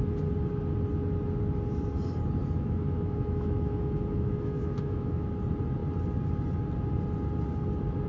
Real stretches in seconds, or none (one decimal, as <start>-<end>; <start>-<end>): 0.0-2.4; 5.3-8.1